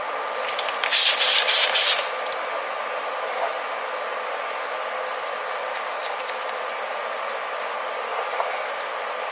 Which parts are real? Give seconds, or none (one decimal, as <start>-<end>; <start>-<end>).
0.0-6.0; 6.9-8.1; 8.9-9.3